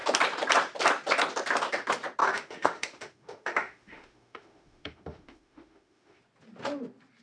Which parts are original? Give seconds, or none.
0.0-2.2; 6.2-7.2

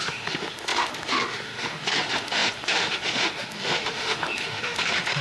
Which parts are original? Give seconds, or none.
none

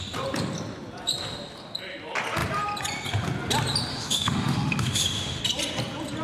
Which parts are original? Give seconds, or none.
0.0-3.9; 5.4-6.2

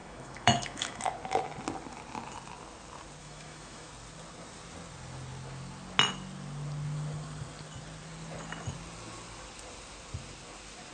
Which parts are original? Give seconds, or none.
1.0-3.2; 3.9-10.9

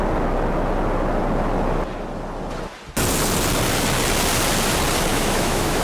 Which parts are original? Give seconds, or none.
0.0-5.1

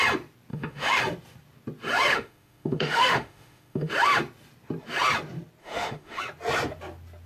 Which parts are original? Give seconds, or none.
0.0-0.5; 1.0-2.1; 3.9-5.6; 6.2-7.3

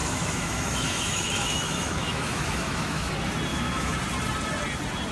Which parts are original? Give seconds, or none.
3.1-3.5; 4.0-5.1